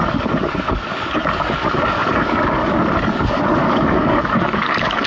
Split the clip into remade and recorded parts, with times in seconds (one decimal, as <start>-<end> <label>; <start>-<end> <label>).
0.0-5.1 remade